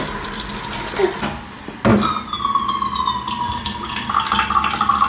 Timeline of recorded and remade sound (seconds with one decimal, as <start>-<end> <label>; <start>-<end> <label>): 0.0-5.1 recorded